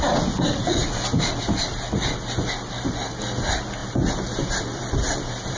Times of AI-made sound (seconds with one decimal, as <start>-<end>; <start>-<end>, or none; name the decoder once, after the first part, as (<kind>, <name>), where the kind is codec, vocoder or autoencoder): 0.0-0.8 (vocoder, BigVGAN v2); 1.7-3.8; 4.6-5.6